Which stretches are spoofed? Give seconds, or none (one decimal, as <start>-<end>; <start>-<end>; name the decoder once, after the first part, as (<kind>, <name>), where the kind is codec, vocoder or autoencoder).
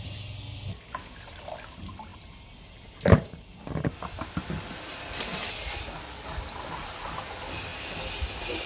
none